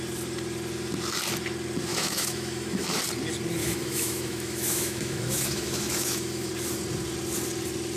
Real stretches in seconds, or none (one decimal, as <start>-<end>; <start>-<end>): 0.0-1.9; 3.0-3.6; 6.5-8.0